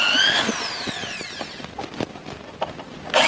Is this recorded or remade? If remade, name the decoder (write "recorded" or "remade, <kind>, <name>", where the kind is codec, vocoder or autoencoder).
recorded